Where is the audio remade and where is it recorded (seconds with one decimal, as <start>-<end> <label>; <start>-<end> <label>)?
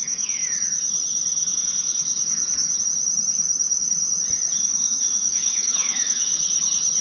0.0-0.4 remade; 0.4-4.6 recorded; 4.6-6.3 remade; 6.3-7.0 recorded